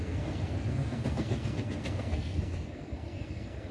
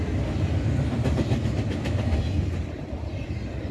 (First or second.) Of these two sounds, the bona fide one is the second